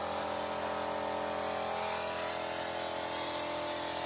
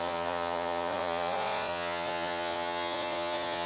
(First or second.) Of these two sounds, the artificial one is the second